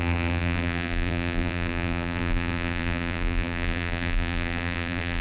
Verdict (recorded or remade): remade